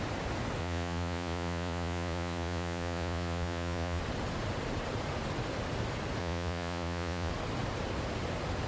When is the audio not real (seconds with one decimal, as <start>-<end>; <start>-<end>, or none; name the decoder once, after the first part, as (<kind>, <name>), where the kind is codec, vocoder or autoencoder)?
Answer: 0.6-4.0 (vocoder, Vocos); 6.2-7.3